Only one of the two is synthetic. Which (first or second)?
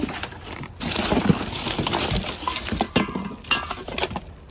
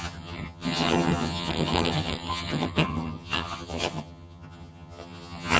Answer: second